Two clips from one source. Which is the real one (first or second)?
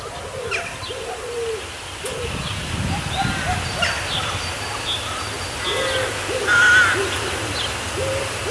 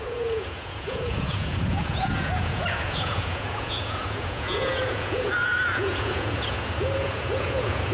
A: first